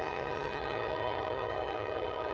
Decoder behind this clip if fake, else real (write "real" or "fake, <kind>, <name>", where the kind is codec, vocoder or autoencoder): fake, vocoder, HiFi-GAN